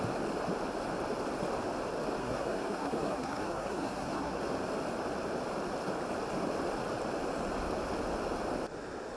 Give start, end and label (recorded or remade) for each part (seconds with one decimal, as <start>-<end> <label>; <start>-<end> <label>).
0.0-2.2 recorded; 2.2-4.4 remade; 4.4-9.2 recorded

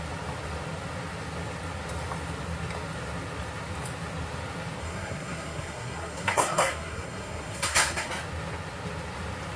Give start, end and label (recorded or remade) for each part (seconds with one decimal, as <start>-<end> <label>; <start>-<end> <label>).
0.0-4.8 recorded; 4.8-8.1 remade; 8.1-9.6 recorded

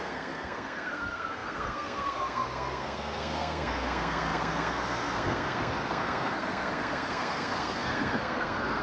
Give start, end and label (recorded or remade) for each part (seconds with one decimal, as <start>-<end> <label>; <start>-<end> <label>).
0.0-8.8 remade

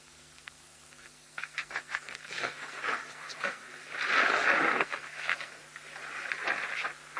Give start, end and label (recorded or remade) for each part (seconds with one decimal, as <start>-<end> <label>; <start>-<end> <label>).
0.0-3.9 remade; 3.9-4.6 recorded; 4.6-5.6 remade; 5.6-7.2 recorded

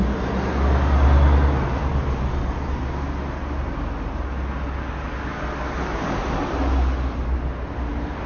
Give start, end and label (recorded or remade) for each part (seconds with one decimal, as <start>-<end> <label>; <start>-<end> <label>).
0.0-8.3 recorded